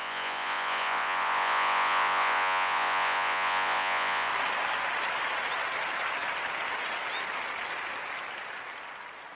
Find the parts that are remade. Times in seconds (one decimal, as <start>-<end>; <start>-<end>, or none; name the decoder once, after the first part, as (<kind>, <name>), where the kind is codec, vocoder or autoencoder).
0.0-4.3 (vocoder, Vocos)